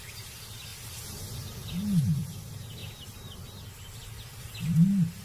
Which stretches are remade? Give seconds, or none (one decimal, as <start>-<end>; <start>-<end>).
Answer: none